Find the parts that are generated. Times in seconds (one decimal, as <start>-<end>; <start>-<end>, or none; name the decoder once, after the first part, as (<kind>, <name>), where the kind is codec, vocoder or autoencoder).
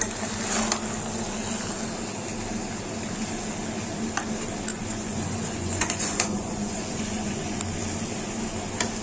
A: 4.7-7.6 (vocoder, Vocos)